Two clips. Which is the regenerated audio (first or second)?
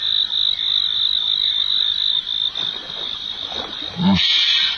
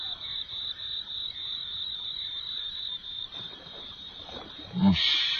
second